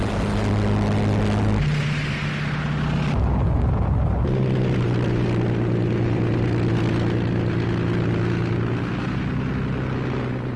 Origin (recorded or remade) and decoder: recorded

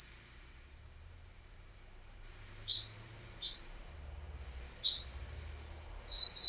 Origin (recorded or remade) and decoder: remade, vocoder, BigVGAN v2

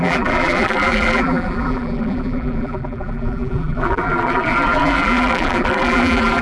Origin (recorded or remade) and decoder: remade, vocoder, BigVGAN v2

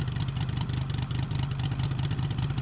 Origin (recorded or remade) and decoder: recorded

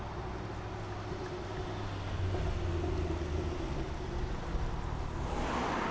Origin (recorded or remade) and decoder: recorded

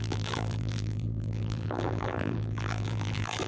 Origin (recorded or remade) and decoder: remade, vocoder, BigVGAN v2